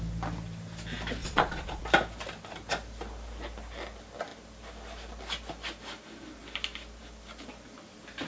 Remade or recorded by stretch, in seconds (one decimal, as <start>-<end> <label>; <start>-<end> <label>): 0.0-1.2 recorded; 1.2-1.8 remade; 1.8-8.3 recorded